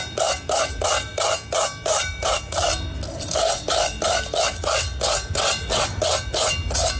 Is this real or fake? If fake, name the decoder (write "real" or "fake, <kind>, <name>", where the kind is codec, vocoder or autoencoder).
real